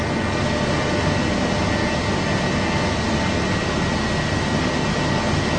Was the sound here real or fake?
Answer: real